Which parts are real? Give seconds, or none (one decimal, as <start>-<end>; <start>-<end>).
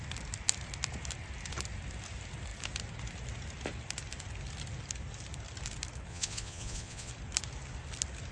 0.0-6.1; 7.1-8.3